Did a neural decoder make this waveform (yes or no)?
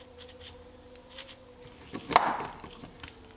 no